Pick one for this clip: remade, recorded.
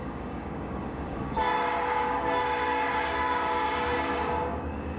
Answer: remade